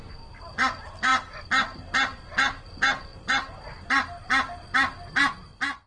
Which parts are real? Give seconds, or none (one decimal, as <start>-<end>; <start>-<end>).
0.0-5.9

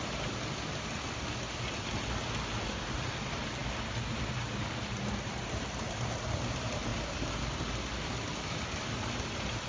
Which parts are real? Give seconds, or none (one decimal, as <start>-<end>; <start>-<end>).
0.0-9.7

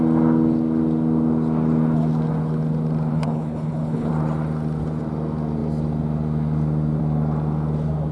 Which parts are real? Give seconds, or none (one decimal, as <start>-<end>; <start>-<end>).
0.0-3.1; 4.1-8.1

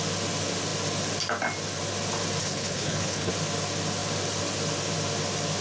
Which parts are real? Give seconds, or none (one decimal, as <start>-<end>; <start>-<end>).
0.0-2.4; 3.3-5.6

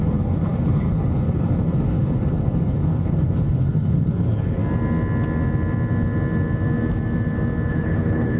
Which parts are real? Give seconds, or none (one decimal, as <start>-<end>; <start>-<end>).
4.6-7.7

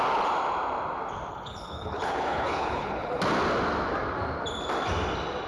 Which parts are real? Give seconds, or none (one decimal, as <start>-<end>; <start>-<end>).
0.0-1.3; 3.2-5.5

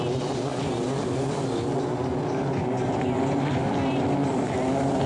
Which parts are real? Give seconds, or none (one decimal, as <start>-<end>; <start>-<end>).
0.0-5.1

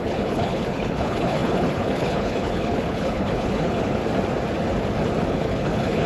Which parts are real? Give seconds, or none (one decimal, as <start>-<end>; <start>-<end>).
4.0-5.3